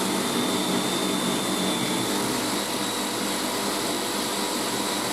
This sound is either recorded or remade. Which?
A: recorded